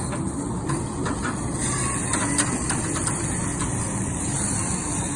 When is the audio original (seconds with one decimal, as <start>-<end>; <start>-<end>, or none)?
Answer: 0.0-5.2